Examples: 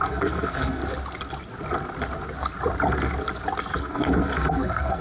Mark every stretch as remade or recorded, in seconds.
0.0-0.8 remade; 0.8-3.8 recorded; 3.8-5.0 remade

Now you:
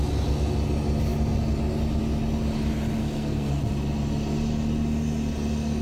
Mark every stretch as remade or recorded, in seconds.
0.0-3.0 recorded; 3.0-3.6 remade; 3.6-5.8 recorded

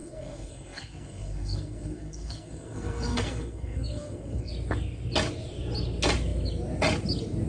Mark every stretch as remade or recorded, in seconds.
0.0-4.5 remade; 4.5-7.5 recorded

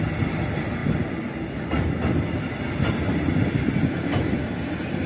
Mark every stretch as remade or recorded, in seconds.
0.0-5.1 recorded

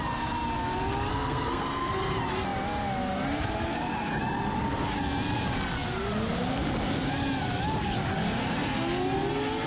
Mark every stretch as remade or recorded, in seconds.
0.0-1.1 recorded; 1.1-1.9 remade; 1.9-9.7 recorded

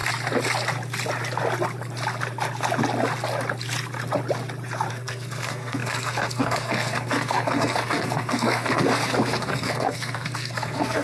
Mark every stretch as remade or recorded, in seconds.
0.0-4.9 recorded; 4.9-11.0 remade

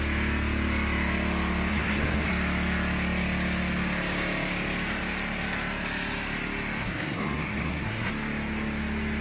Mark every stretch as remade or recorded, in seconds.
0.0-1.7 recorded; 1.7-2.3 remade; 2.3-6.8 recorded; 6.8-8.1 remade; 8.1-9.2 recorded